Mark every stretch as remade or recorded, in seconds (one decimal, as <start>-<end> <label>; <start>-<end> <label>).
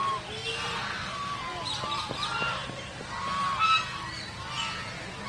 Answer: 0.0-5.3 recorded